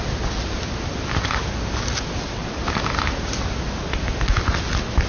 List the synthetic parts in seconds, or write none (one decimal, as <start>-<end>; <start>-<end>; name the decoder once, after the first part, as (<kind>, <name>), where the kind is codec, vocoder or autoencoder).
none